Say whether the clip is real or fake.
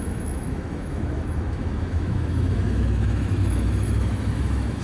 fake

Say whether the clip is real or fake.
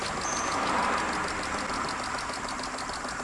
real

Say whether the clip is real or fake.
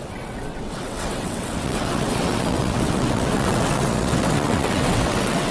fake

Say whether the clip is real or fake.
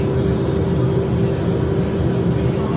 real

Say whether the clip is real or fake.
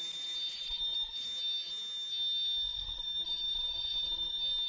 real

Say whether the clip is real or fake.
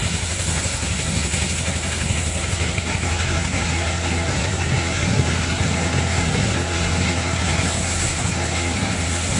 fake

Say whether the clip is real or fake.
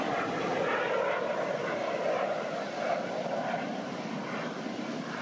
real